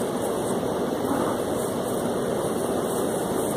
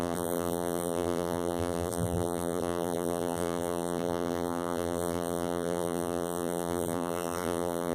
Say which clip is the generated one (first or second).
second